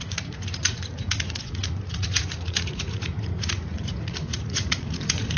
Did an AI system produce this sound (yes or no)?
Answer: yes